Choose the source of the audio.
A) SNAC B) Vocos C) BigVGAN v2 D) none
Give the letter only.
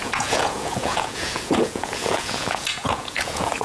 B